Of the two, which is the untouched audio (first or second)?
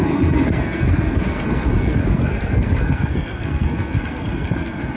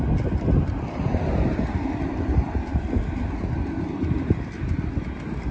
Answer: second